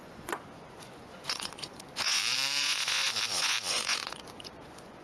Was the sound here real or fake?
fake